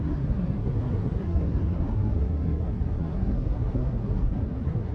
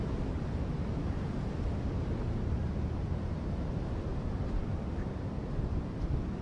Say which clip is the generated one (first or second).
first